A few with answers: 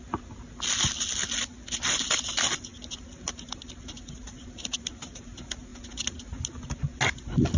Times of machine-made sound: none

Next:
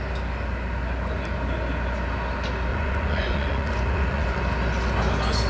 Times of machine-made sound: 2.7-4.4 (vocoder, Vocos)